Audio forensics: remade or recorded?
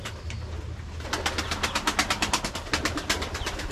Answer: recorded